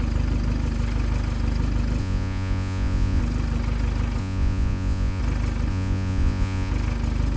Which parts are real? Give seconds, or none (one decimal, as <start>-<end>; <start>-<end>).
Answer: 0.0-2.0; 3.2-4.2; 5.2-5.7; 6.7-7.4